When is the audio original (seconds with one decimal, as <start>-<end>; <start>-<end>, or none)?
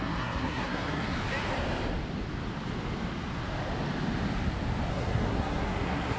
1.2-4.9